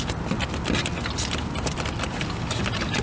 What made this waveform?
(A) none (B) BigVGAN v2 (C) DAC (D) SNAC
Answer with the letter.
A